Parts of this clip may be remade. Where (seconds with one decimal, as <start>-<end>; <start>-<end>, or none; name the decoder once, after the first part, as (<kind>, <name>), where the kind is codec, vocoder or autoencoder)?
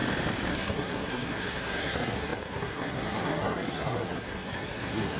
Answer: 0.5-5.2 (codec, SNAC)